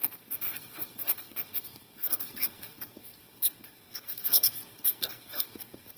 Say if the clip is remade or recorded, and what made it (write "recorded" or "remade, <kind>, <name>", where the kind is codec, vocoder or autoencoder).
remade, codec, SNAC